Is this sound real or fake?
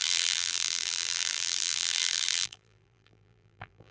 fake